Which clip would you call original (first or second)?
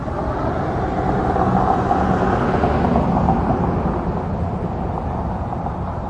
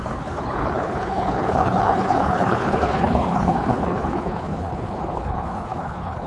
first